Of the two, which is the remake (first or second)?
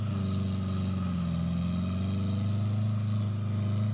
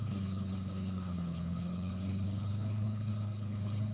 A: second